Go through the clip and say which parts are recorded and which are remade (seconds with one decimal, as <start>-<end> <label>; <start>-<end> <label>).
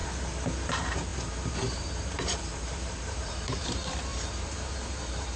0.0-0.7 recorded; 0.7-5.4 remade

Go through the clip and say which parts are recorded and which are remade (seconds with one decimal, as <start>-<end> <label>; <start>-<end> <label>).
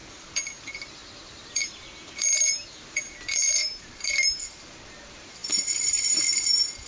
0.0-6.9 remade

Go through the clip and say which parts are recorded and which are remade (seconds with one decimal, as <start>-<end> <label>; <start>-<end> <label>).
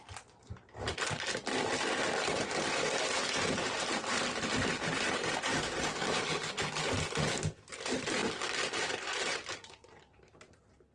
0.0-10.9 recorded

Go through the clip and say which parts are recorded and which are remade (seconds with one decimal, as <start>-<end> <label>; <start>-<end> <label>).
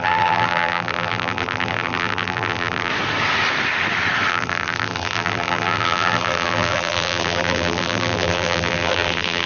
0.0-2.9 remade; 2.9-4.3 recorded; 4.3-9.5 remade